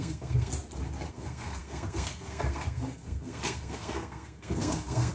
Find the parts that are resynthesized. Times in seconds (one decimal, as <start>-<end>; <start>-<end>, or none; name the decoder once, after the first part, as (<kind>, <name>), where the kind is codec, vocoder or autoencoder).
0.0-0.5 (codec, SNAC); 1.1-5.1